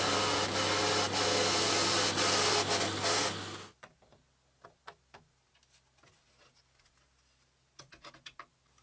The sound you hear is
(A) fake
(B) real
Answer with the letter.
B